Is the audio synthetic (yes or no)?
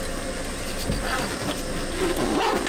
no